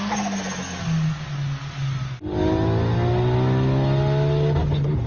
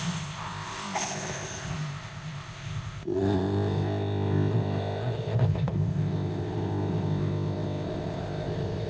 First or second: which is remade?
second